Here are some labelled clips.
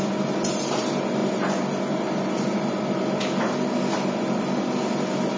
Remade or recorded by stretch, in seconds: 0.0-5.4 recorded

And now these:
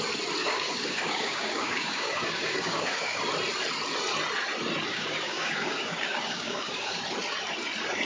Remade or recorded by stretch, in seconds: 0.0-0.4 recorded; 0.4-3.2 remade; 3.2-4.9 recorded; 4.9-7.0 remade; 7.0-8.0 recorded

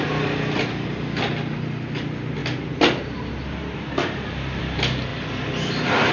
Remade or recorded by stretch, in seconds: 0.0-2.4 recorded; 2.4-4.6 remade; 4.6-6.1 recorded